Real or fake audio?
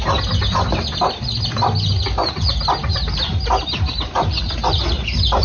real